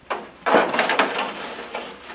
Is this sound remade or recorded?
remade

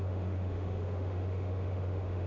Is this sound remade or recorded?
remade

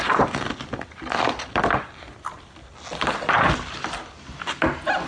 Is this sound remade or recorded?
recorded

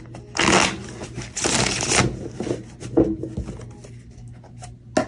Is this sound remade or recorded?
recorded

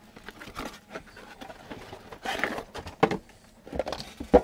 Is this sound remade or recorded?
recorded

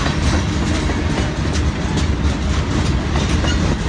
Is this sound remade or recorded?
recorded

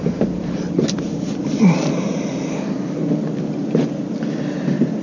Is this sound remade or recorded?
recorded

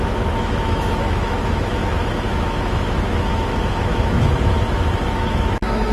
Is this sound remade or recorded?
remade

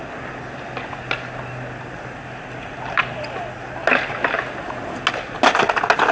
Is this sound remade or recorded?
recorded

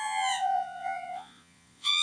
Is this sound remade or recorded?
remade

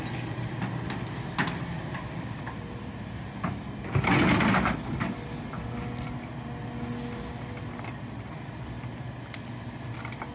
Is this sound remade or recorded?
recorded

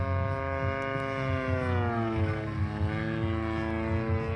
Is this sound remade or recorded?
recorded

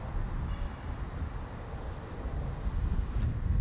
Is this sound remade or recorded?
recorded